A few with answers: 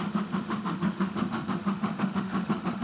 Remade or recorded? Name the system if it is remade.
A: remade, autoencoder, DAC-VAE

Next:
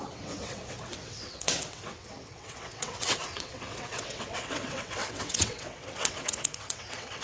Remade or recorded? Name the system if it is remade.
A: remade, vocoder, WaveNeXt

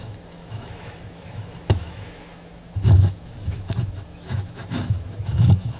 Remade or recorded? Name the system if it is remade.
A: remade, autoencoder, DAC-VAE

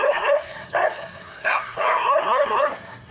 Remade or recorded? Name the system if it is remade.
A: remade, codec, SNAC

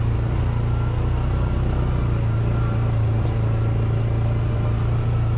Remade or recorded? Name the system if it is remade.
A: recorded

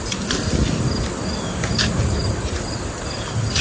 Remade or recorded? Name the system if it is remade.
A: recorded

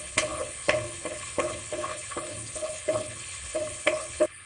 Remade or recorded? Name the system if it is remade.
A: remade, codec, HILCodec